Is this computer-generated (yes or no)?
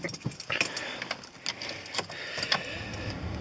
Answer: no